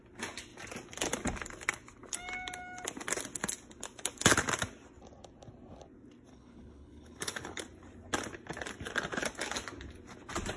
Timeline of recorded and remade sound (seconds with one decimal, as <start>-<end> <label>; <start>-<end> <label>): 0.0-6.3 recorded; 6.3-7.6 remade; 7.6-10.6 recorded